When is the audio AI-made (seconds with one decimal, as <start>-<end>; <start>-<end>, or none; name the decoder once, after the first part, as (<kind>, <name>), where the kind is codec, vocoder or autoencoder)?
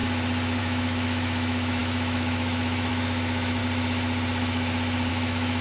0.6-3.6 (autoencoder, DAC-VAE); 5.1-5.6